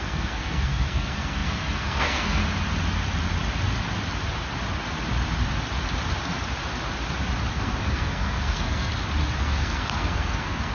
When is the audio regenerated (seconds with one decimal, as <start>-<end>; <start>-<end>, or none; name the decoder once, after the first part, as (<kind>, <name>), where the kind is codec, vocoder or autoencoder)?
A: 0.0-2.4 (codec, SNAC); 7.5-8.9; 9.4-10.7